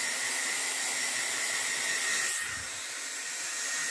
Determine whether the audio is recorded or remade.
recorded